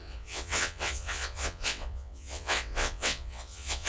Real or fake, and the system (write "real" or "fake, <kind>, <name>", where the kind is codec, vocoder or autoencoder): fake, vocoder, WaveNeXt